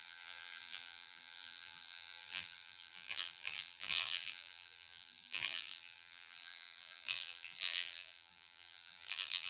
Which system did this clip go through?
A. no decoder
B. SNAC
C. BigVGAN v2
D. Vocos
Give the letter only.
C